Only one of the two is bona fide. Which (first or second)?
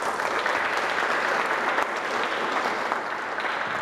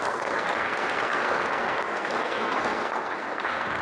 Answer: first